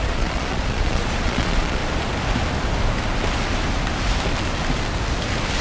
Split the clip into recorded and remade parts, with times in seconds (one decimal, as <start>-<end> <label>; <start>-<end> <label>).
0.0-1.8 remade; 1.8-5.6 recorded